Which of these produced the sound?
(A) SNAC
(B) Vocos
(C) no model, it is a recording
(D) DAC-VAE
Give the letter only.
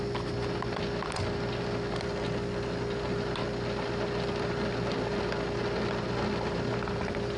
C